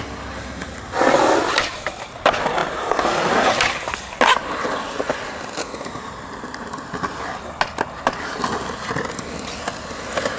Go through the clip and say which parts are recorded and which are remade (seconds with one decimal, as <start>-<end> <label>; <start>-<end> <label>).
0.0-10.4 recorded

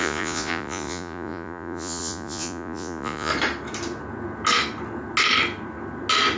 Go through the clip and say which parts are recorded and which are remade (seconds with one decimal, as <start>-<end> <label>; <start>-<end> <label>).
0.0-3.3 remade; 3.3-6.4 recorded

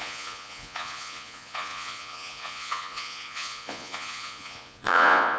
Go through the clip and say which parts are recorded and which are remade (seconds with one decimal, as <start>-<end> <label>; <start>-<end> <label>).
0.0-5.4 remade

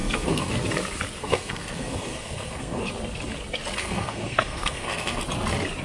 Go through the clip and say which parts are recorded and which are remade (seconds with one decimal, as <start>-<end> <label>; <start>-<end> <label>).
0.0-0.5 remade; 0.5-1.2 recorded; 1.2-2.8 remade; 2.8-3.8 recorded; 3.8-5.2 remade; 5.2-5.8 recorded

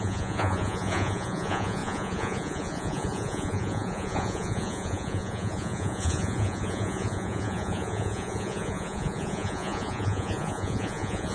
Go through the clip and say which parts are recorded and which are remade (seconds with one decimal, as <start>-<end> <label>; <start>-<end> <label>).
0.0-11.3 remade

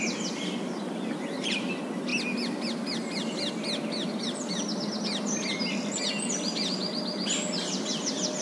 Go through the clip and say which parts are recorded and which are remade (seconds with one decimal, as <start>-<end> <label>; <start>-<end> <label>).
0.0-8.4 recorded

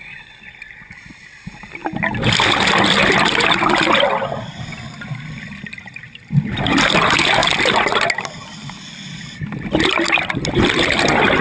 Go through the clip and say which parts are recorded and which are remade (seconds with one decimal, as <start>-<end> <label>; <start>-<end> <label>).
0.0-1.8 remade; 1.8-6.8 recorded; 6.8-7.4 remade; 7.4-10.3 recorded; 10.3-11.4 remade

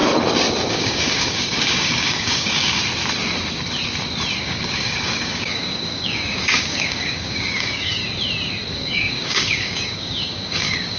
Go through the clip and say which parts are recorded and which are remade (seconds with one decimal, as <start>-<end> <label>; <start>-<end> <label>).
0.0-0.7 recorded; 0.7-2.8 remade; 2.8-4.4 recorded; 4.4-8.0 remade; 8.0-8.7 recorded; 8.7-11.0 remade